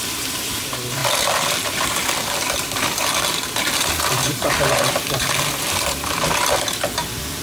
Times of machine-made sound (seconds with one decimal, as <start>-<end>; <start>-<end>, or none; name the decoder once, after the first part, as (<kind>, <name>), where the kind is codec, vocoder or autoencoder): 0.0-7.4 (vocoder, BigVGAN v2)